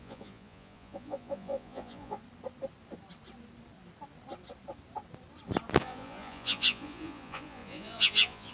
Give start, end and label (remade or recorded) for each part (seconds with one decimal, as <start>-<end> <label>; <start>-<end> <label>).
0.0-2.2 remade; 2.2-5.8 recorded; 5.8-8.5 remade